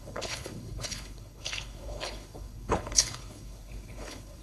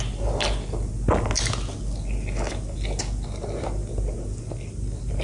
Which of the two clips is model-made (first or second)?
first